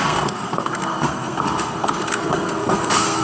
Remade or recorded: remade